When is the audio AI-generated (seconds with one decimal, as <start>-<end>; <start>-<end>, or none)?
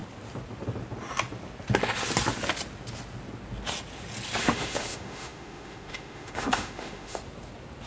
4.4-7.2